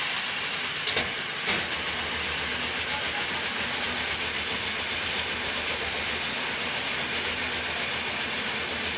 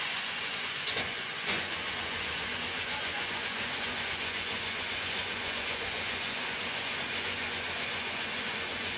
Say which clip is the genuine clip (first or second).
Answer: first